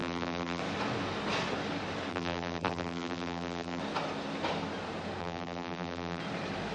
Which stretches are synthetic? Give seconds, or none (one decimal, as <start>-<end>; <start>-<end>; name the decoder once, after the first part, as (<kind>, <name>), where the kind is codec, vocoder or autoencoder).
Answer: 0.0-0.6 (vocoder, BigVGAN v2); 2.1-3.8; 5.2-6.2